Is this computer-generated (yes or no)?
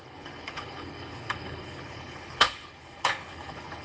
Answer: yes